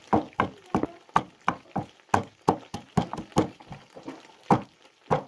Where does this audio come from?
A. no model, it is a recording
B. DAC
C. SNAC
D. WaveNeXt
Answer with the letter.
A